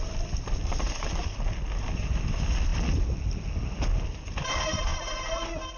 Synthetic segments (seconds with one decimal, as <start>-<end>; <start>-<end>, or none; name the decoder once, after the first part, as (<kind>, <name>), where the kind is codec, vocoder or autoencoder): 0.0-4.9 (vocoder, BigVGAN v2)